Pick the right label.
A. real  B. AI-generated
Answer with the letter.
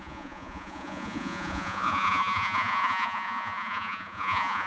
B